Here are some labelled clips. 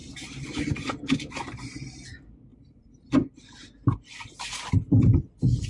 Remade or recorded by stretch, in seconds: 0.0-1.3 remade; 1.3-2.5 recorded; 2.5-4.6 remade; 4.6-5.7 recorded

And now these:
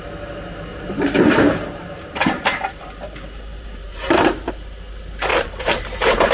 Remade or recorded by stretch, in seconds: 0.0-0.7 recorded; 0.7-4.5 remade; 4.5-5.3 recorded; 5.3-6.3 remade